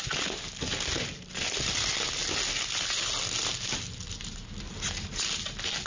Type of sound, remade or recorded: recorded